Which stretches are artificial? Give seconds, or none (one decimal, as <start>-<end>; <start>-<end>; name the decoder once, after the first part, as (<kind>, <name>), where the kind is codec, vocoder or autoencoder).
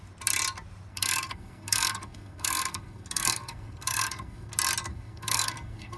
0.9-4.5 (codec, SNAC); 4.9-6.0